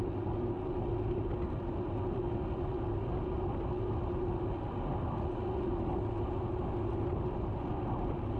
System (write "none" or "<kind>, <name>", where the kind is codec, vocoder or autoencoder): none